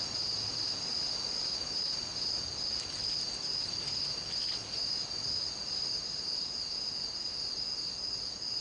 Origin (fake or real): real